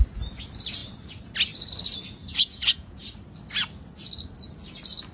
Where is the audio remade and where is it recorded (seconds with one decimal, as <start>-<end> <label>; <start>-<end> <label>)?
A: 0.0-2.2 recorded; 2.2-3.0 remade; 3.0-5.1 recorded